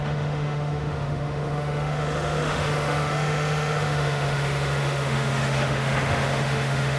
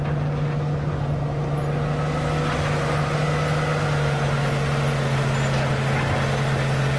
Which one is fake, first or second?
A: first